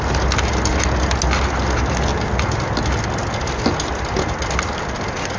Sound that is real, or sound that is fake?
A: real